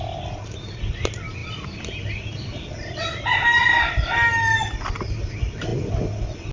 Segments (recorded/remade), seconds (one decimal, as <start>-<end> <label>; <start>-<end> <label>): 0.0-6.5 recorded